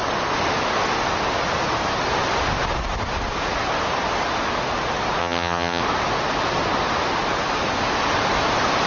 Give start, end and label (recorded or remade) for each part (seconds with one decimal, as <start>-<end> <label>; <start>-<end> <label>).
0.0-5.2 recorded; 5.2-5.8 remade; 5.8-8.9 recorded